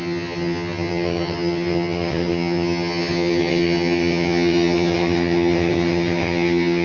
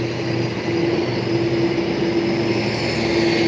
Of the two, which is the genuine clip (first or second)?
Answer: second